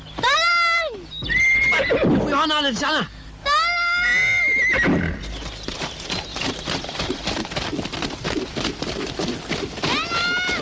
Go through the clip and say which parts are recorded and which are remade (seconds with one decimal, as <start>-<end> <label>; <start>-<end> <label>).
0.0-10.6 recorded